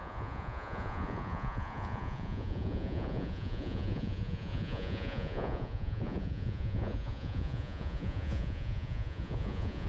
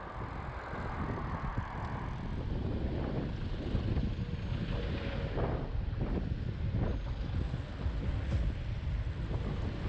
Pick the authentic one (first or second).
second